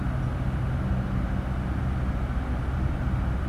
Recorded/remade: recorded